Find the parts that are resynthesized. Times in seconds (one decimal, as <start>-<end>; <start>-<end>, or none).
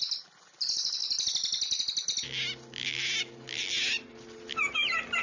none